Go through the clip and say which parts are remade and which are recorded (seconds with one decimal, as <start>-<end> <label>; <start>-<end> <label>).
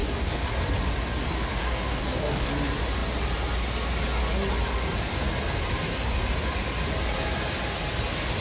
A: 0.0-0.5 remade; 0.5-1.6 recorded; 1.6-2.5 remade; 2.5-8.4 recorded